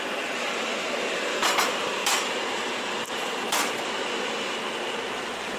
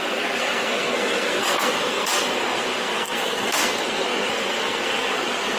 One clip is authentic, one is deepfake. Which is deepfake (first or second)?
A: second